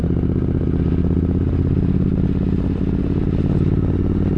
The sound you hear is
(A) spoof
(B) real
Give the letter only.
B